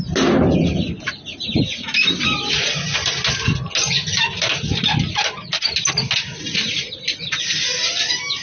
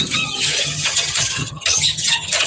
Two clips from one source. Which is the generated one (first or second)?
second